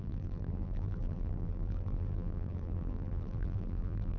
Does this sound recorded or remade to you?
remade